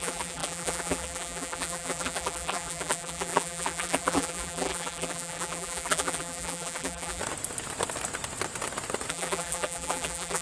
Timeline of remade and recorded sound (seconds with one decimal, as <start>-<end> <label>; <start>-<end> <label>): 0.0-7.2 remade; 7.2-9.1 recorded; 9.1-10.4 remade